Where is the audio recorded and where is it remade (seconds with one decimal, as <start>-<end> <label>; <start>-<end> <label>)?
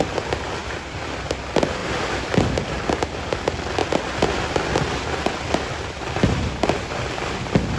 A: 0.0-0.6 recorded; 0.6-1.4 remade; 1.4-7.8 recorded